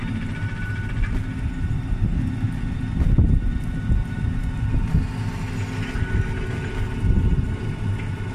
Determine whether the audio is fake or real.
real